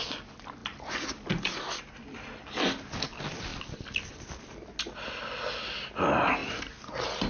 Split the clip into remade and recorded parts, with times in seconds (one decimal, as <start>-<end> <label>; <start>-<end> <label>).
0.0-0.6 recorded; 0.6-1.4 remade; 1.4-7.3 recorded